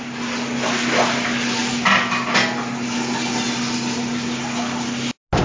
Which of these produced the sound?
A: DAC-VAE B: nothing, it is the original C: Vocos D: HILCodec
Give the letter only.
B